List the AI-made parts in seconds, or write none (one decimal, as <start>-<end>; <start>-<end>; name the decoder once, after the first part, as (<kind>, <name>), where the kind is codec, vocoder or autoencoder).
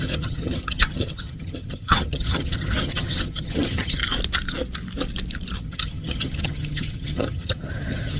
0.0-4.0 (vocoder, HiFi-GAN); 5.6-8.2